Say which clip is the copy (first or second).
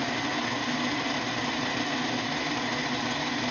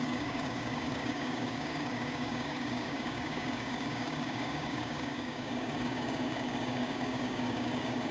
second